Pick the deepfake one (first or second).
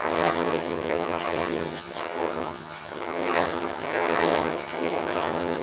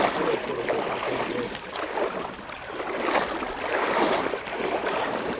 first